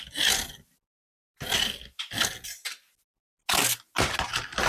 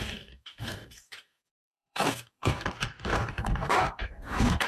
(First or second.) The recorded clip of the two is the first